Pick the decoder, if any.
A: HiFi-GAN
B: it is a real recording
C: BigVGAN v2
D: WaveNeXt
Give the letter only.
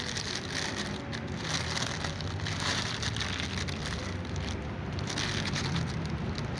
B